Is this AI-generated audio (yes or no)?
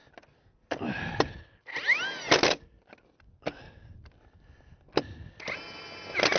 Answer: no